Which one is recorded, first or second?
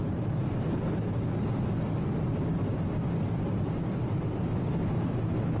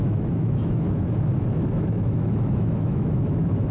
first